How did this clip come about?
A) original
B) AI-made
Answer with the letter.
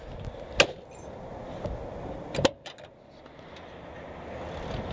A